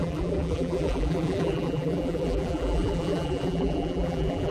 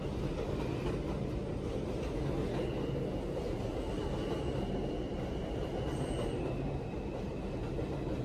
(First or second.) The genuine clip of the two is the second